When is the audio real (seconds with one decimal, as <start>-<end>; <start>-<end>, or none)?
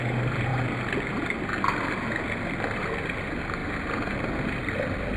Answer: 0.0-5.2